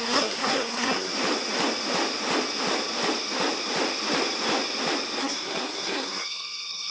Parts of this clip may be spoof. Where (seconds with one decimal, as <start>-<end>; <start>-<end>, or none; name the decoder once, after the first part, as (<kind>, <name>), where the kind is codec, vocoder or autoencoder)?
0.0-1.1 (codec, SNAC); 5.2-6.9